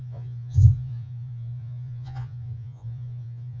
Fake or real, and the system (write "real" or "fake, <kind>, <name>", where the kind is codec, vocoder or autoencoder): fake, vocoder, Vocos